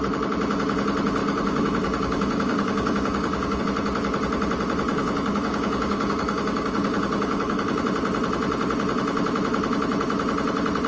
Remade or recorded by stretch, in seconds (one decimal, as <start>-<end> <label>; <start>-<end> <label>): 0.0-1.2 recorded; 1.2-3.6 remade; 3.6-4.9 recorded; 4.9-7.8 remade; 7.8-10.9 recorded